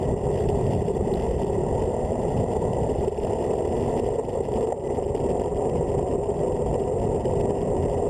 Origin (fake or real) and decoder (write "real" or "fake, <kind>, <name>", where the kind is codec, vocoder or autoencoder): real